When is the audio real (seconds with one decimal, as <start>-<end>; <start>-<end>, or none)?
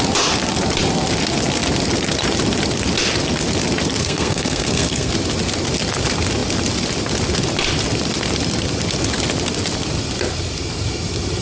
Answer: 0.0-4.0; 5.1-11.4